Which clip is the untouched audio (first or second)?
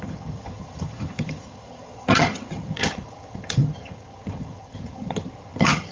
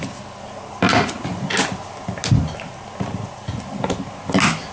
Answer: second